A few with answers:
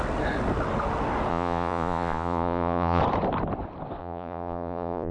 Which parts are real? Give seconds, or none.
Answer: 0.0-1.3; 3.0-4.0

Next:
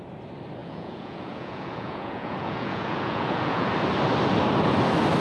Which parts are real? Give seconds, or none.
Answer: 0.0-0.6; 3.7-5.2

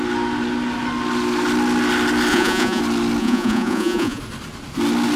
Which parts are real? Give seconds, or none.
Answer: 0.0-2.3; 2.8-3.2; 4.2-5.2